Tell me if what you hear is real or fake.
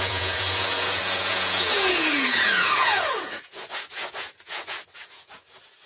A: fake